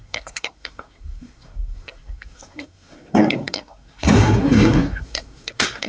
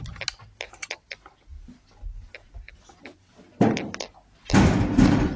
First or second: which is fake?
first